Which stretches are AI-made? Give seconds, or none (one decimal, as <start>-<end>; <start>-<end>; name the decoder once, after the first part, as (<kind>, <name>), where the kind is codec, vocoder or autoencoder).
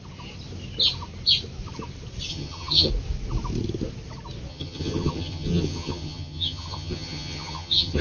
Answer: 2.3-2.9 (vocoder, HiFi-GAN); 4.5-8.0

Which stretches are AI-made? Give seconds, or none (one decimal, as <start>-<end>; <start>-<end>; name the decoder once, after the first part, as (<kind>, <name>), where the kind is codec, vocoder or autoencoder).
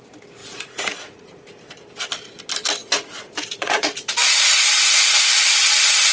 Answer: 0.4-1.5 (vocoder, Vocos); 2.8-4.5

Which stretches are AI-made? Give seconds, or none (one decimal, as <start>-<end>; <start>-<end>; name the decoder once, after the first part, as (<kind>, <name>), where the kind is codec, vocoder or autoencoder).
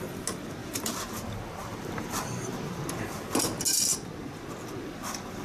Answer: 0.6-2.8 (vocoder, BigVGAN v2)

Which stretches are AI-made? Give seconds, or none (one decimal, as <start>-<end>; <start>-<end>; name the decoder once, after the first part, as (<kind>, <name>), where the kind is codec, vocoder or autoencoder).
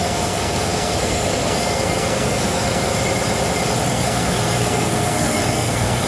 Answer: 0.0-2.9 (codec, SNAC); 3.9-6.1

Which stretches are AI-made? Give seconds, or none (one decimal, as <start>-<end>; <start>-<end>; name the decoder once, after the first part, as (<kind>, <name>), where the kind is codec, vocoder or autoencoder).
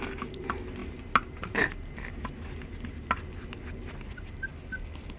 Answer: none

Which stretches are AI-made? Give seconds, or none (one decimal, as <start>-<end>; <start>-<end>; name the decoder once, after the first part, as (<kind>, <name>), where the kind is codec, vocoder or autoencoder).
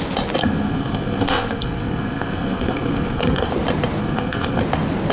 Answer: 0.4-3.5 (codec, SNAC); 4.0-4.6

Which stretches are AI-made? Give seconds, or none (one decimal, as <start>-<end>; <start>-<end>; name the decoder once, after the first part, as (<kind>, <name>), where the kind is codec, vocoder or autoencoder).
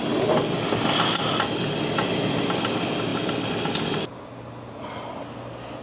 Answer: none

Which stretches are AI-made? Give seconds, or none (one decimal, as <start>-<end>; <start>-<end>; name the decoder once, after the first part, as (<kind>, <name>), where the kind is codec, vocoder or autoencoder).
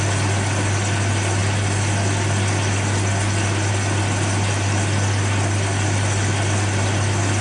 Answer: none